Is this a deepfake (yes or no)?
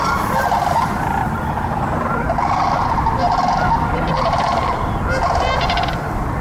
yes